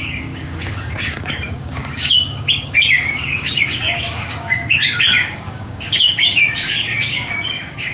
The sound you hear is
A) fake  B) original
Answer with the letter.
A